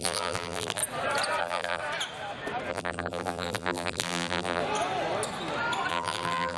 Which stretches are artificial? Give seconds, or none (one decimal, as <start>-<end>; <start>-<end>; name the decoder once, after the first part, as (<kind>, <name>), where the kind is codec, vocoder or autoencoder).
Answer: 0.0-0.8 (vocoder, BigVGAN v2); 1.4-1.8; 2.7-4.6; 5.9-6.6